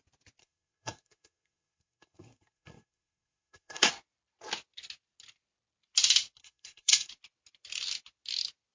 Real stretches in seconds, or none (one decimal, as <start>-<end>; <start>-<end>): 0.0-0.4; 3.9-6.4; 7.1-8.7